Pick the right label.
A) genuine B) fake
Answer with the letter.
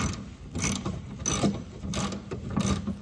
A